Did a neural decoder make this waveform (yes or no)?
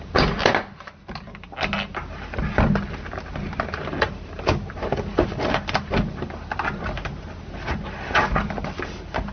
no